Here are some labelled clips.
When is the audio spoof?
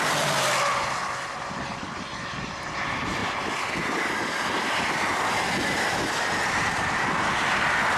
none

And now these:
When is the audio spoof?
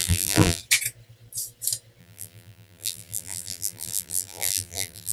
0.0-0.6; 2.0-5.1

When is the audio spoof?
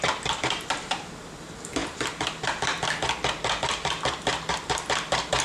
0.0-5.4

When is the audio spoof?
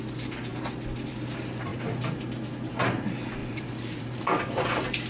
3.4-4.2